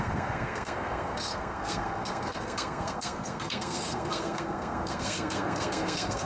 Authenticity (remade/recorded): remade